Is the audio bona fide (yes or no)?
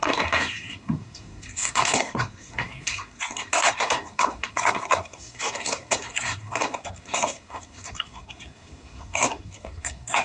no